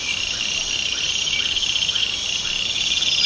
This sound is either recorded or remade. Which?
recorded